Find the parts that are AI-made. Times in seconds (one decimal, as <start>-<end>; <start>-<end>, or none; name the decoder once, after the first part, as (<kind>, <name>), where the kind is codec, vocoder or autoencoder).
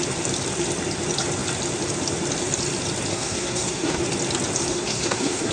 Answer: 3.1-4.0 (codec, SNAC); 4.7-5.5